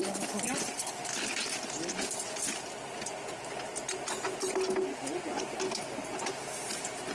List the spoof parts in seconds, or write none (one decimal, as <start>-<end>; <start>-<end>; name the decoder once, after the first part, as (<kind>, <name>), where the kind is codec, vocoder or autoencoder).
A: 4.9-5.4 (vocoder, Vocos)